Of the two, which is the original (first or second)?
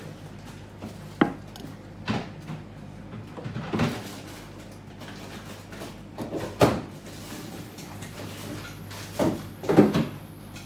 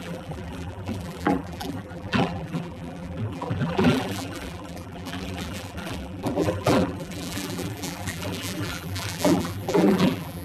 first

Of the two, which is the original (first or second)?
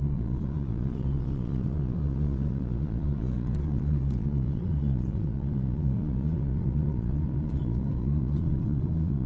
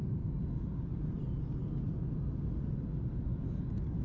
second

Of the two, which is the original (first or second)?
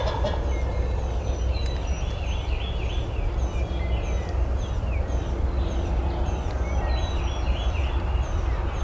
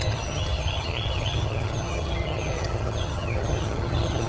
first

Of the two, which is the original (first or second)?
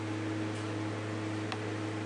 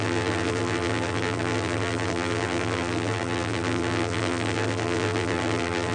first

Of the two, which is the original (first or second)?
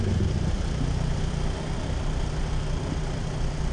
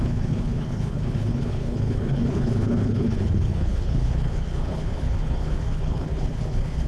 first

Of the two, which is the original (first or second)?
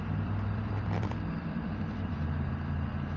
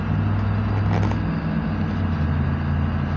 second